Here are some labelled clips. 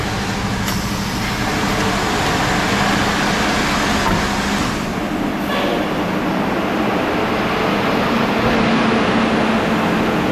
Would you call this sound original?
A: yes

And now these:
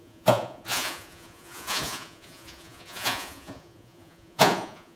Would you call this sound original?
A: no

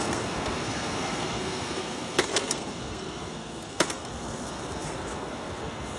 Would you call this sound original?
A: no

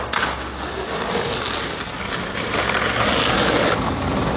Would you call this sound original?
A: yes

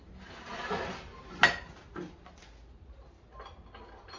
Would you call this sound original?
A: yes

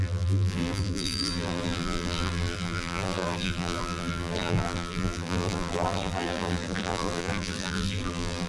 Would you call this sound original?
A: no